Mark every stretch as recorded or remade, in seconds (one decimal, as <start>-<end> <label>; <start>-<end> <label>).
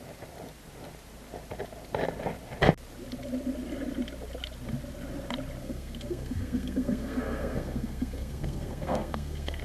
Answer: 0.0-5.6 recorded; 5.6-9.6 remade